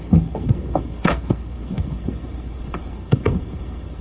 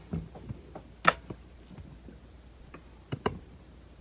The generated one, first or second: first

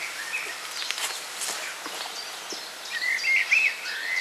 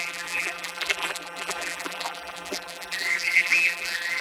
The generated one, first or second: second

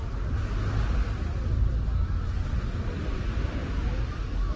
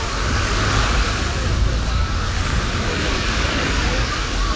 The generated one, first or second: second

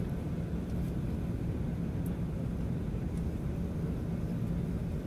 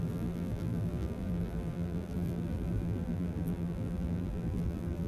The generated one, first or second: second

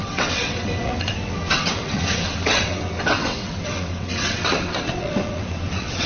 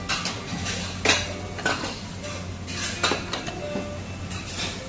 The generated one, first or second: first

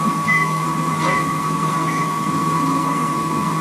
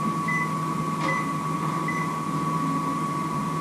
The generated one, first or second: first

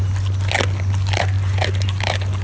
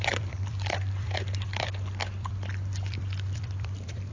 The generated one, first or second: second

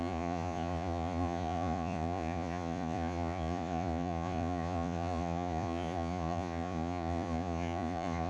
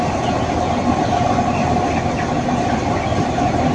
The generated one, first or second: first